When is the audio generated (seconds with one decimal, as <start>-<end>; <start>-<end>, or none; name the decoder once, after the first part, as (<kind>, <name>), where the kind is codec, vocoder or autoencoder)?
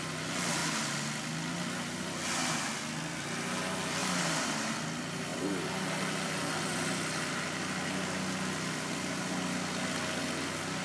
4.0-4.7 (vocoder, BigVGAN v2)